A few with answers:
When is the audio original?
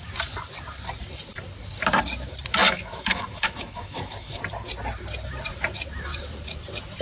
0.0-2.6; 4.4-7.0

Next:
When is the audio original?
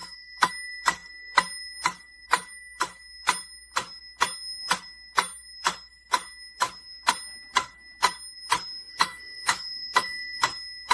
0.5-8.9; 10.4-10.9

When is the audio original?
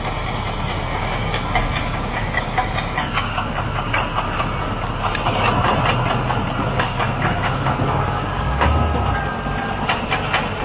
0.0-0.9; 3.9-6.7; 8.8-10.6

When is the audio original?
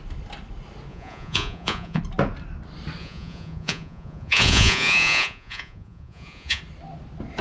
0.0-0.9; 2.0-3.0; 6.6-7.4